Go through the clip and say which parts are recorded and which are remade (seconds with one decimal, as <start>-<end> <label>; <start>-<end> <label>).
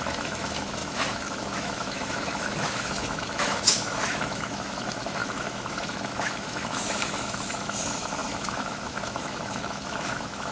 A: 0.0-10.5 remade